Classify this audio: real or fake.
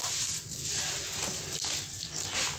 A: real